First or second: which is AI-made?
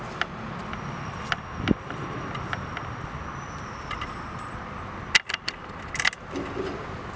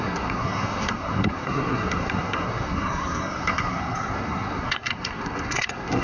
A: second